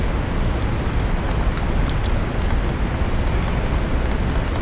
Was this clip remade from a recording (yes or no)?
no